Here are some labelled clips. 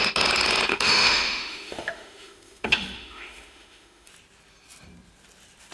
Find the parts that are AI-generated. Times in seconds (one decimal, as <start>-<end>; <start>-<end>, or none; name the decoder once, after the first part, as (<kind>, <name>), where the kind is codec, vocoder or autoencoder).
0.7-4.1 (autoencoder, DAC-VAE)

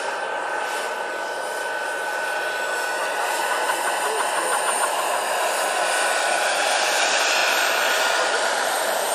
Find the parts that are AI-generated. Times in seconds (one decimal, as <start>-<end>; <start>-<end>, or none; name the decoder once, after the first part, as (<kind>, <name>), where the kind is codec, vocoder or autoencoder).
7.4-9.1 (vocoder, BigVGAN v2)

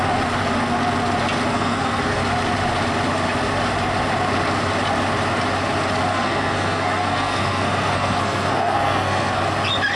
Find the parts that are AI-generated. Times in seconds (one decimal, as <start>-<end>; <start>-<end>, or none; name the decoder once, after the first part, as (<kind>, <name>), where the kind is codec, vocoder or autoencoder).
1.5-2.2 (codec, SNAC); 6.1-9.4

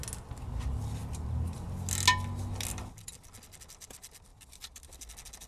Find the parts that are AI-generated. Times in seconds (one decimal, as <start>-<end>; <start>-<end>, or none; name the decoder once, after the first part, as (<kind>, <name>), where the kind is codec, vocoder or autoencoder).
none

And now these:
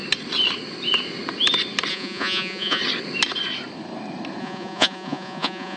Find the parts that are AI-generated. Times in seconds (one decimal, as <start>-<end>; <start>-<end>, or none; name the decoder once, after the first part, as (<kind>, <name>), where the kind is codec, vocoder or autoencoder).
1.9-2.8 (vocoder, Vocos); 4.4-5.8